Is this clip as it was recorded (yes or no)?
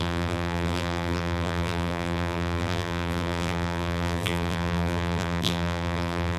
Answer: no